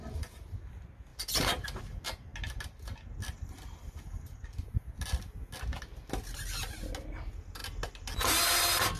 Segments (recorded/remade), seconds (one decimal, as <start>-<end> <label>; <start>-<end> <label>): 0.0-9.0 recorded